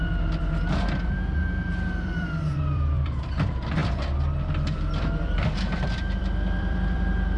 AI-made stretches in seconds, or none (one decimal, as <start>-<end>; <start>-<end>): 0.0-7.4